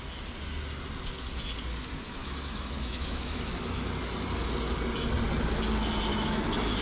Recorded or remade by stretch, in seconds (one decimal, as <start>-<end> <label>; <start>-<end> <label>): 0.0-2.2 recorded; 2.2-3.5 remade; 3.5-6.1 recorded; 6.1-6.8 remade